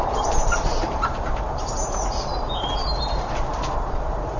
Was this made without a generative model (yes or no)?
no